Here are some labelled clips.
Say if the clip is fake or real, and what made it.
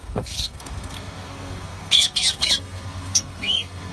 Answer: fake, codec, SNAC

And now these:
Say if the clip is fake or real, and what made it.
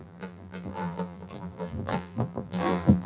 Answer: fake, vocoder, BigVGAN v2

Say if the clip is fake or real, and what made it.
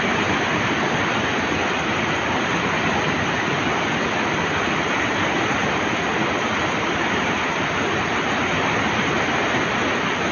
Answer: real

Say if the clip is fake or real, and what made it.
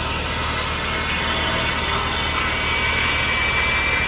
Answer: real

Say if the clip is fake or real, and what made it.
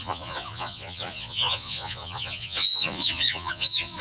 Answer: fake, vocoder, Vocos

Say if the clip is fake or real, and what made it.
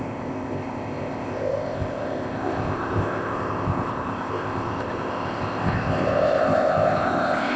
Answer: fake, codec, ZipCodec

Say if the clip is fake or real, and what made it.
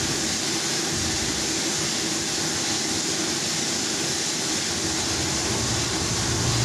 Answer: real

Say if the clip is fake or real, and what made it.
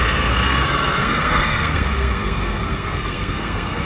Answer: fake, codec, SNAC